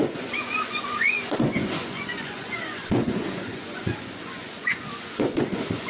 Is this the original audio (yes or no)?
no